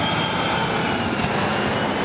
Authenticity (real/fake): fake